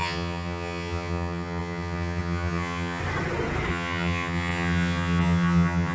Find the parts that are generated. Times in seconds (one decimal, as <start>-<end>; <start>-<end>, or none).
0.0-3.0; 3.7-5.9